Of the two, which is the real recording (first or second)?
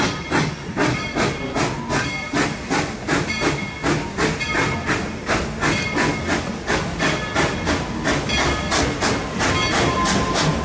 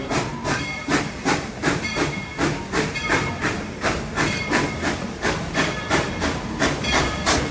first